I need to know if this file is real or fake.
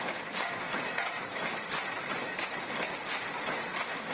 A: real